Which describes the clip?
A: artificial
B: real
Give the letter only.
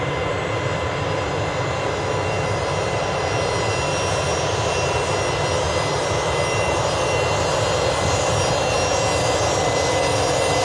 B